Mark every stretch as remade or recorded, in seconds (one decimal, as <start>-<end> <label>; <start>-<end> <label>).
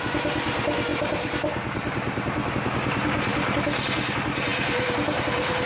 0.0-0.9 recorded; 0.9-2.5 remade; 2.5-3.3 recorded; 3.3-4.1 remade; 4.1-5.7 recorded